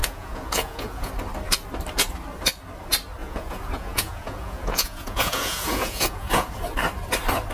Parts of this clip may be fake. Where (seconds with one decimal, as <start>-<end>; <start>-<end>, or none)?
0.0-1.1; 3.2-6.5